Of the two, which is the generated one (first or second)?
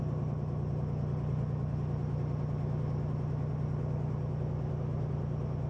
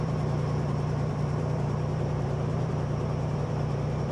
second